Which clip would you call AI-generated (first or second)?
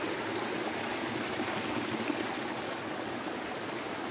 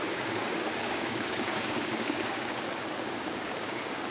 second